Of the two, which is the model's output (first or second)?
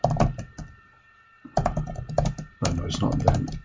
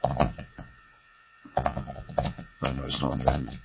second